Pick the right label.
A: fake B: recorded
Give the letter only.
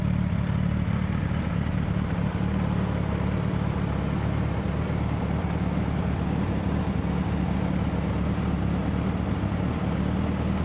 B